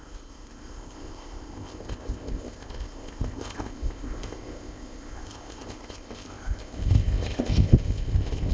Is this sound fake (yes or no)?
yes